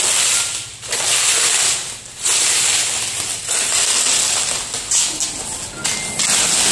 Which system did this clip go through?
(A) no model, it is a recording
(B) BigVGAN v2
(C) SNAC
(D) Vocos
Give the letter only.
A